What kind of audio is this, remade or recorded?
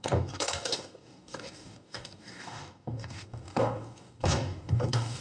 remade